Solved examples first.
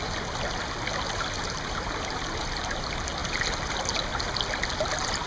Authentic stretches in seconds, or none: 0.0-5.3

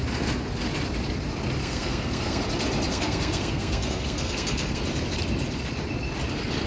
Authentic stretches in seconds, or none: 0.0-1.6; 2.4-2.9; 4.8-6.7

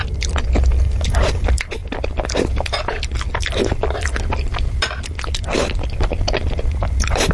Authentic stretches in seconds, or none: 0.0-7.3

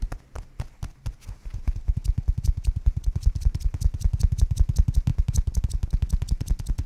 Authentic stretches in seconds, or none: 0.0-6.9

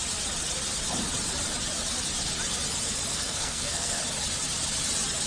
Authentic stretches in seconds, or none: 0.0-3.1; 4.0-5.3

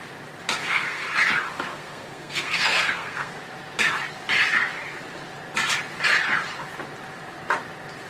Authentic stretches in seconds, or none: 0.0-0.6; 1.1-1.7; 3.4-8.1